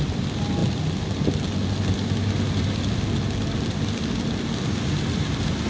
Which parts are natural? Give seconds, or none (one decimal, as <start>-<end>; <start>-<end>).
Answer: 0.0-5.7